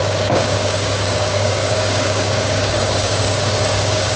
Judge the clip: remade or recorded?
remade